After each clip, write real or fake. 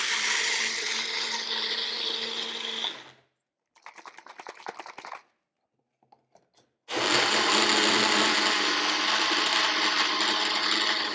real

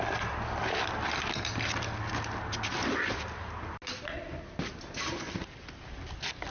real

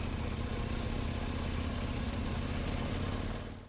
real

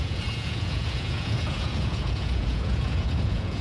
fake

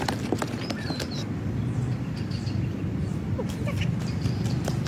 real